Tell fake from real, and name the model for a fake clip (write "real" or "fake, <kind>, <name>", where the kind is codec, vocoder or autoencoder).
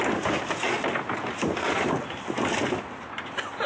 real